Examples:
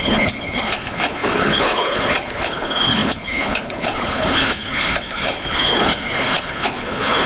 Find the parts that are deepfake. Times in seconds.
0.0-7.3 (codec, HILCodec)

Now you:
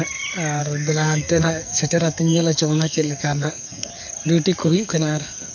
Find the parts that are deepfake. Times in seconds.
0.6-3.9 (codec, SNAC); 4.6-5.5

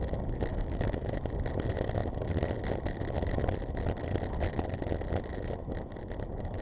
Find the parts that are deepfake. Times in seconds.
0.5-1.1 (autoencoder, DAC-VAE)

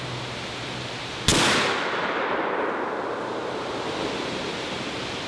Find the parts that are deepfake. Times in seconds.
none